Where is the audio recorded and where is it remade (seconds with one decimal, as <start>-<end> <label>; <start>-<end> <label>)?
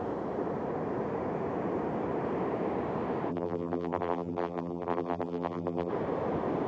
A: 0.0-3.3 recorded; 3.3-5.9 remade; 5.9-6.7 recorded